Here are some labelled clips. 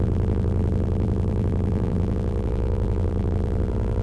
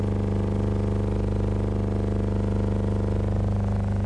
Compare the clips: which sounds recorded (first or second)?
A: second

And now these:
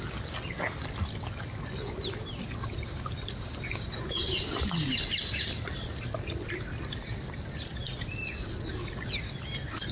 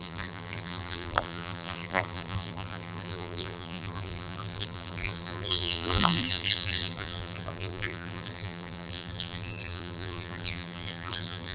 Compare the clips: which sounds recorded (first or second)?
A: first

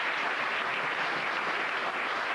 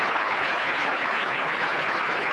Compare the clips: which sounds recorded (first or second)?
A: first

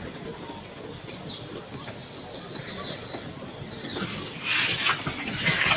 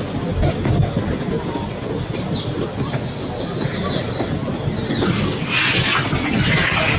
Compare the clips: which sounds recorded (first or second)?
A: second